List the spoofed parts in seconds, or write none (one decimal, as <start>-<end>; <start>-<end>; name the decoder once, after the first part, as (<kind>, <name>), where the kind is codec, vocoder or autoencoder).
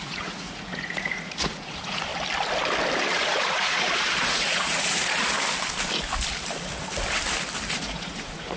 0.0-2.1 (vocoder, Vocos); 3.1-5.2; 7.8-8.6